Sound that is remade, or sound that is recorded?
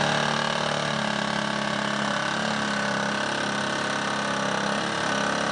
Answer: recorded